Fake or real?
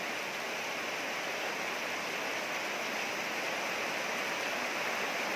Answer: real